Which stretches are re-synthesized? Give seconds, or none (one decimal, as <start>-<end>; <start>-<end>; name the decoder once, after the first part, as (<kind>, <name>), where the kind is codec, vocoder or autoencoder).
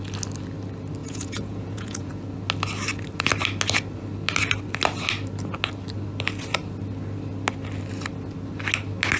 1.0-2.1 (vocoder, Vocos)